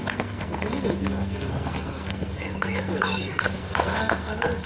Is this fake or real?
fake